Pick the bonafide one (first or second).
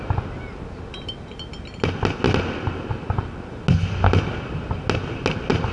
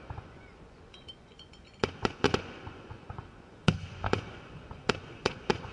first